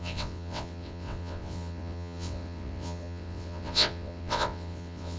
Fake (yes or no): yes